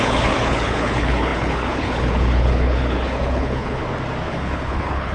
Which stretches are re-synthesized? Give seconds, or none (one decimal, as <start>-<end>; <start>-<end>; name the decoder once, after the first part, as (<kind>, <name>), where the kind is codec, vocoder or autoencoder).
0.0-3.8 (codec, HILCodec); 4.3-5.1